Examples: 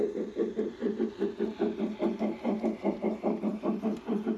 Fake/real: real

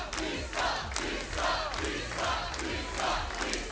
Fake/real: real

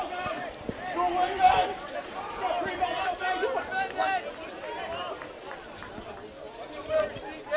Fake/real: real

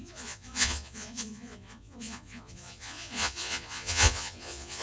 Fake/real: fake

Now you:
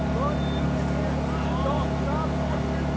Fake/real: real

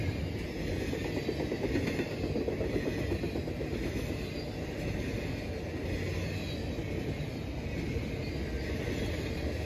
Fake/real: real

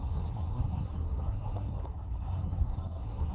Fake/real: fake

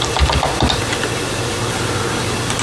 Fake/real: real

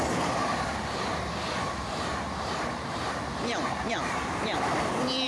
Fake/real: fake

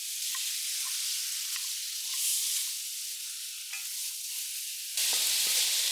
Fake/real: real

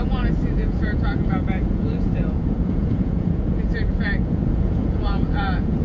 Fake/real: fake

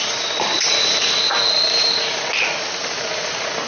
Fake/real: real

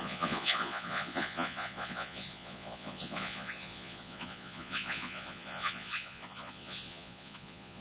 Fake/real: fake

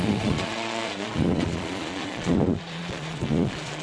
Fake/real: fake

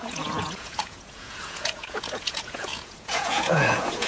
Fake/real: fake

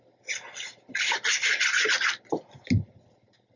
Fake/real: real